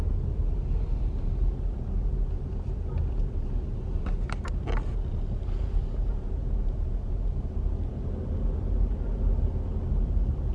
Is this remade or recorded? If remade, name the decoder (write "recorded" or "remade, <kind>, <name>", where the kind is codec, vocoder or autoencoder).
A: recorded